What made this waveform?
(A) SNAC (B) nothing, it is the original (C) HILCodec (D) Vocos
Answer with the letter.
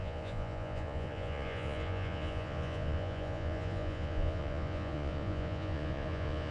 D